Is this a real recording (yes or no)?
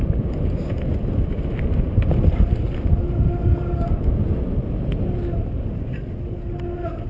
yes